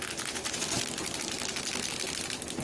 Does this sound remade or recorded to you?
recorded